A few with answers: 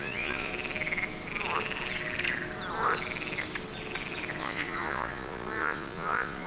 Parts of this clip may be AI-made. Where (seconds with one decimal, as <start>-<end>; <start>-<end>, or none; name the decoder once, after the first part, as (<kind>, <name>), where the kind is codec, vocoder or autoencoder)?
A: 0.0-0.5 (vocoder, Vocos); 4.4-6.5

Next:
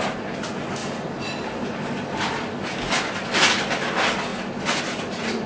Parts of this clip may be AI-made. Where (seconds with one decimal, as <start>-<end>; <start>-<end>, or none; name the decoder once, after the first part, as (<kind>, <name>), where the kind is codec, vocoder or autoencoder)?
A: none

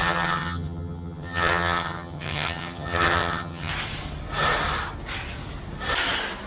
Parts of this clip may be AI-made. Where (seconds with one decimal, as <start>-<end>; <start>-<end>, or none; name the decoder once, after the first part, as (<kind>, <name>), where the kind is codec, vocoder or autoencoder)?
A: 0.0-3.7 (vocoder, HiFi-GAN)

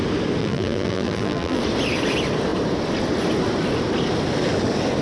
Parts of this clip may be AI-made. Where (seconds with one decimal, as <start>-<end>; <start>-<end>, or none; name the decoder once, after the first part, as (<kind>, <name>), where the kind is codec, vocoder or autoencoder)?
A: 0.4-1.6 (vocoder, BigVGAN v2)

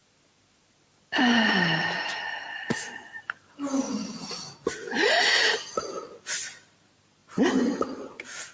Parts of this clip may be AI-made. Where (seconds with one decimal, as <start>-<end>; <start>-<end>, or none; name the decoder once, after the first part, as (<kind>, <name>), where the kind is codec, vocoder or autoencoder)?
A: none